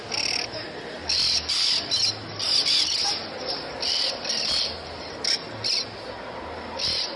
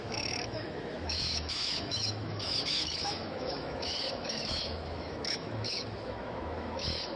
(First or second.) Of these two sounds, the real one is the first